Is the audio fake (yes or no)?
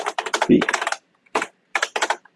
yes